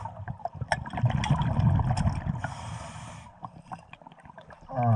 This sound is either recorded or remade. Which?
recorded